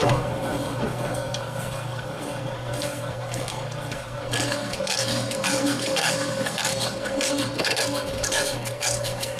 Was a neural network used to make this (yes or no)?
yes